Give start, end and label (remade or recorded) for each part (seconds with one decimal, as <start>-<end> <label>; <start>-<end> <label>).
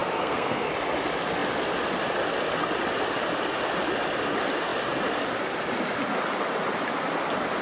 0.0-0.7 remade; 0.7-7.6 recorded